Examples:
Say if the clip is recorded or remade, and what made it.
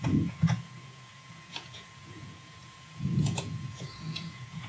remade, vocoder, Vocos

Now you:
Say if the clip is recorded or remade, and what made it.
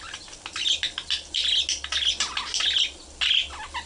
recorded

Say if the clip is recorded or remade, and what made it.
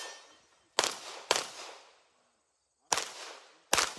recorded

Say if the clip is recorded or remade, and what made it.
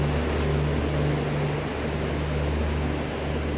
recorded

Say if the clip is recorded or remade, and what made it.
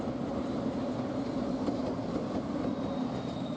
recorded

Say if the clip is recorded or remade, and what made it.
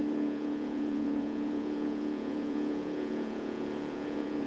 remade, vocoder, Vocos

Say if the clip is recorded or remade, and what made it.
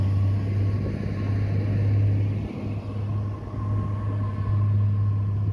recorded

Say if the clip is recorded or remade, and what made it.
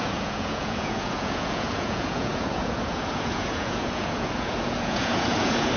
remade, vocoder, Vocos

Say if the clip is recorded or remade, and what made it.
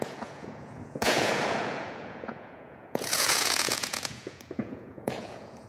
remade, vocoder, Vocos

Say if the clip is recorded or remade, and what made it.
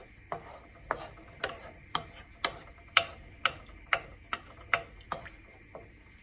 recorded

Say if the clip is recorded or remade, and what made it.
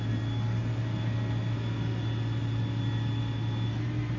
recorded